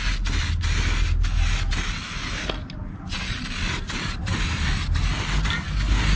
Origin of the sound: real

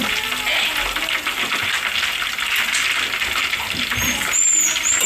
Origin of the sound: real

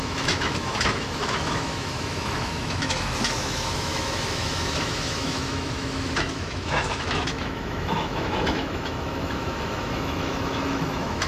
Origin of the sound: fake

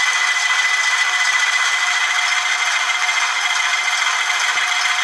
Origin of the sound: real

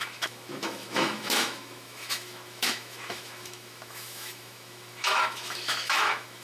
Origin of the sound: fake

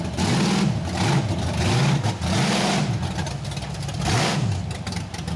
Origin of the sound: real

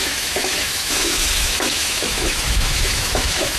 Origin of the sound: fake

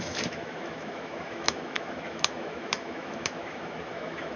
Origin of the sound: fake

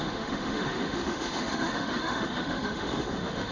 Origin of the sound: fake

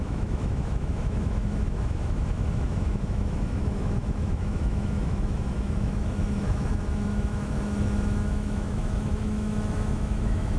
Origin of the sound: fake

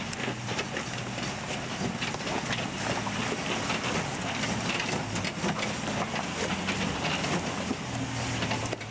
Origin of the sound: real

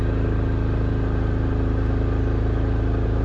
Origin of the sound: real